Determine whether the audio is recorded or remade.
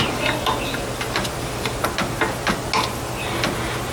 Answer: recorded